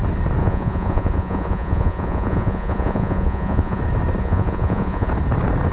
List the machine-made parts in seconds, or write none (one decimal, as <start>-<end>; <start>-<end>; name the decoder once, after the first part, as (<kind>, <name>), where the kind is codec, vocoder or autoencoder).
0.4-3.8 (vocoder, Vocos); 4.2-5.1